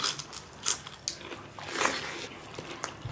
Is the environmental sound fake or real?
real